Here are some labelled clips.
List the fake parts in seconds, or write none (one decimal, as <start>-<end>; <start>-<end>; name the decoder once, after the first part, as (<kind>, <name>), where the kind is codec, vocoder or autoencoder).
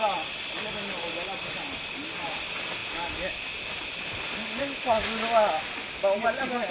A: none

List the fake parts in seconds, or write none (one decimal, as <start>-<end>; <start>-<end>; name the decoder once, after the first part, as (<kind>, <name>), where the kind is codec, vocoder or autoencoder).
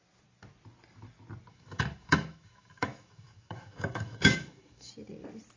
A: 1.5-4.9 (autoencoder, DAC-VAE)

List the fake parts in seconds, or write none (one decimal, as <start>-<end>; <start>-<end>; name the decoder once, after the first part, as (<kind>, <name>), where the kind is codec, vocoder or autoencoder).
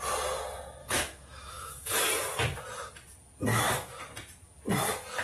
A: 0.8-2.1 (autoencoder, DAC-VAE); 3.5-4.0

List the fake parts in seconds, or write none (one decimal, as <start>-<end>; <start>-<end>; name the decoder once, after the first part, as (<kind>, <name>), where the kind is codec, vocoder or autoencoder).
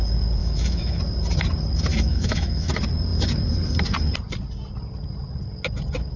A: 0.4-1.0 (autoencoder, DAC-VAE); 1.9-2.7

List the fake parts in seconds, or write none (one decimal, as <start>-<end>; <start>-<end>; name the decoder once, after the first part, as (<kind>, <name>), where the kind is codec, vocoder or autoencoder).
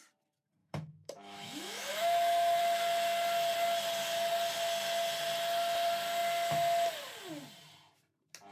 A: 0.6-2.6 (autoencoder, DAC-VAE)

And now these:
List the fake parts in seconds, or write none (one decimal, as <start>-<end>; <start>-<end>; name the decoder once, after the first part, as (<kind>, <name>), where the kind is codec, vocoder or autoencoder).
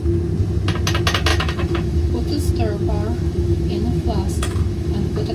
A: 1.3-2.5 (autoencoder, DAC-VAE); 2.9-5.3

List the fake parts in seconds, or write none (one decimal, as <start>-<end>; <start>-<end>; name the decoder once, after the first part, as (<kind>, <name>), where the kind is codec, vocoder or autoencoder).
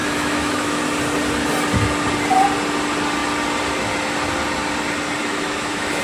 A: 0.0-0.8 (autoencoder, DAC-VAE); 5.2-6.0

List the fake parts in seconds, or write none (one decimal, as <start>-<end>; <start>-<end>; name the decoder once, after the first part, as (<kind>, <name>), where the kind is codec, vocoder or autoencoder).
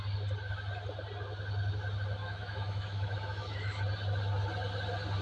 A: 2.2-3.8 (autoencoder, DAC-VAE)